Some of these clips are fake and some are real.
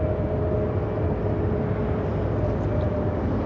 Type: real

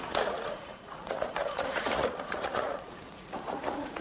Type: fake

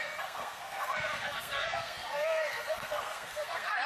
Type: fake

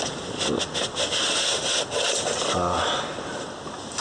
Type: real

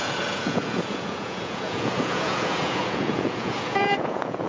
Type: fake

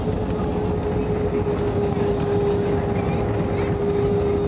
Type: real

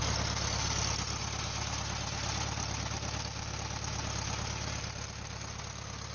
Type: real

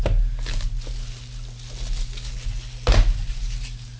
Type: real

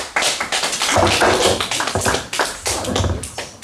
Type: real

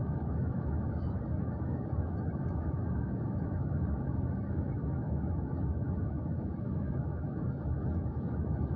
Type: fake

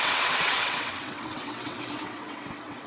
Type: fake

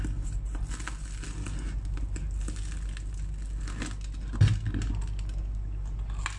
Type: real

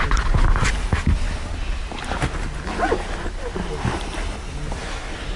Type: real